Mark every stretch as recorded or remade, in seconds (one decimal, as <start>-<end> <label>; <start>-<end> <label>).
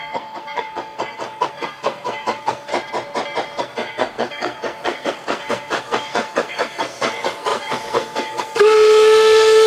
0.0-2.7 remade; 2.7-3.6 recorded; 3.6-9.7 remade